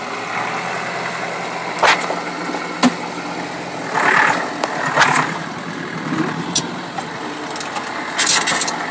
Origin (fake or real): real